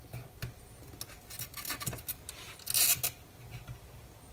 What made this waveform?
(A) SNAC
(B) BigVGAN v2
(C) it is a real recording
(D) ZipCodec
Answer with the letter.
C